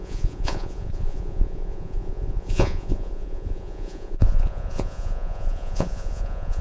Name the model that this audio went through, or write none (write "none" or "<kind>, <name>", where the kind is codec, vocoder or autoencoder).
vocoder, Vocos